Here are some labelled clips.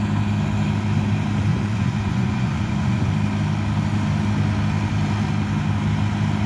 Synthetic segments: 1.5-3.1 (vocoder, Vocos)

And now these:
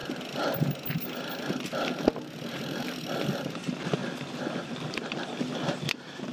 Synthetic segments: none

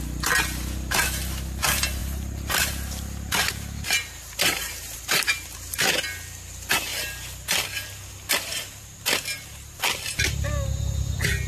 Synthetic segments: 2.0-5.2 (vocoder, BigVGAN v2)

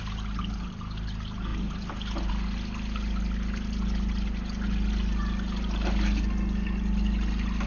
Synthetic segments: none